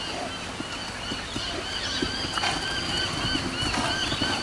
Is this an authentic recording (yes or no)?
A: yes